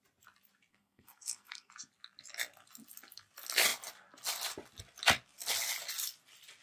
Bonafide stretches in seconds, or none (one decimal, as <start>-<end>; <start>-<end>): 0.0-0.7; 1.7-6.6